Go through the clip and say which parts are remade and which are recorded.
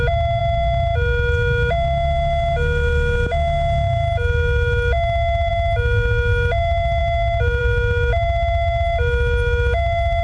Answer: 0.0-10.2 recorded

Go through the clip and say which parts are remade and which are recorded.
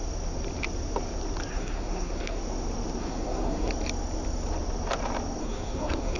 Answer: 0.0-1.5 recorded; 1.5-2.4 remade; 2.4-3.0 recorded; 3.0-3.7 remade; 3.7-5.4 recorded; 5.4-6.2 remade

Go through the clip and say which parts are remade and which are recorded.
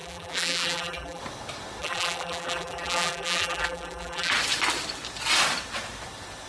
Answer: 0.0-1.2 remade; 1.2-1.8 recorded; 1.8-4.3 remade; 4.3-6.5 recorded